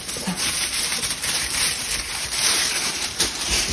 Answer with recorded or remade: remade